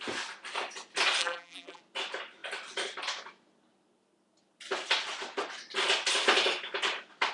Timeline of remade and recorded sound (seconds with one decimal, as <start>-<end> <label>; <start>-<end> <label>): 0.0-1.2 recorded; 1.2-1.8 remade; 1.8-7.3 recorded